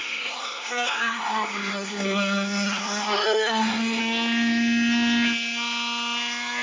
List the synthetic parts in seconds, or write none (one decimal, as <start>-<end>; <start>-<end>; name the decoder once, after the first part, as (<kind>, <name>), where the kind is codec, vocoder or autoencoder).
0.0-4.0 (codec, SNAC)

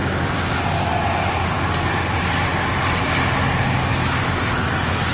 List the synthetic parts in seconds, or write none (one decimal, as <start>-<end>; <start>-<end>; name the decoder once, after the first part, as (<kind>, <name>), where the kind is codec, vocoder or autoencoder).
3.9-4.4 (autoencoder, DAC-VAE)

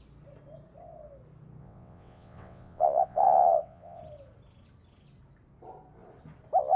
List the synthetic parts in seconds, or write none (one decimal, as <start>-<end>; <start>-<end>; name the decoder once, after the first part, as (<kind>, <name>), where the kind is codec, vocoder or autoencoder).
1.6-4.0 (vocoder, WaveNeXt)

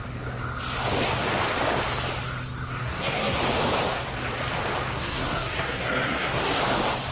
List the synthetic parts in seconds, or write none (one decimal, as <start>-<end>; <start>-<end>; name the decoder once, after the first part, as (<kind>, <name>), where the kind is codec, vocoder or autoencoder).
2.8-3.4 (codec, SNAC); 4.9-6.6